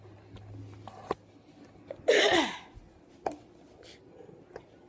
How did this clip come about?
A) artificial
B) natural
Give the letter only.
B